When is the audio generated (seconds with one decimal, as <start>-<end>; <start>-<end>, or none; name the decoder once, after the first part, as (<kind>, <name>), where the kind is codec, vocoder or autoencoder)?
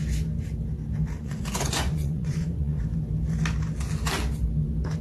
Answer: 1.2-2.8 (vocoder, Vocos)